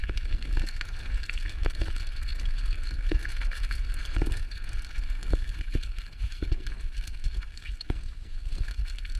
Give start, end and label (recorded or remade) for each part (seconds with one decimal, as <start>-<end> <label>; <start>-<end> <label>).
0.0-9.2 remade